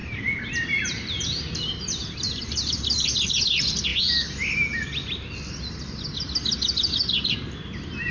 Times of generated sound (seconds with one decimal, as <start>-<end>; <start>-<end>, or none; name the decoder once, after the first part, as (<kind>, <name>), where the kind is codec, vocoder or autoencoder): 0.0-3.3 (vocoder, BigVGAN v2)